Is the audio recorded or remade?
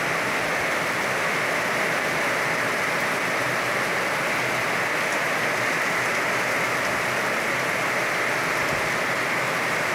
recorded